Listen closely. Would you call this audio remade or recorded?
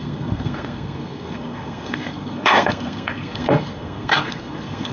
remade